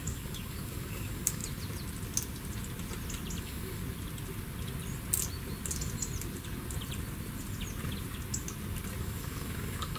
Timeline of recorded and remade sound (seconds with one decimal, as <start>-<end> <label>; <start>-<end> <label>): 0.0-1.4 remade; 1.4-3.4 recorded; 3.4-3.8 remade; 3.8-9.0 recorded; 9.0-10.0 remade